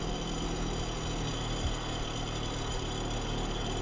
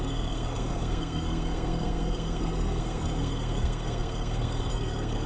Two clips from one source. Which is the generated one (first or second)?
second